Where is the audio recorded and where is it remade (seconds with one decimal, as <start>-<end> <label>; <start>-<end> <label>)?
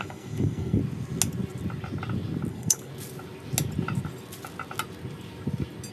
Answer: 0.0-0.8 remade; 0.8-2.5 recorded; 2.5-2.9 remade; 2.9-5.9 recorded